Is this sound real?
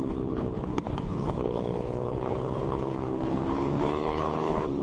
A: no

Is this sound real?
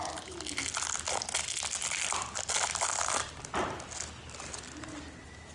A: yes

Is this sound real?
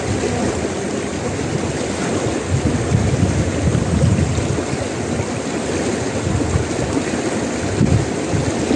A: yes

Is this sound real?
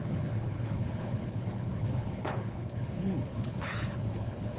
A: no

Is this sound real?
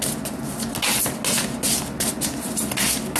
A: yes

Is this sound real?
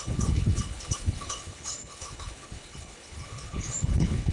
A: no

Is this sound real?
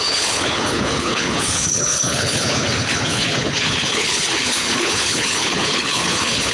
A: no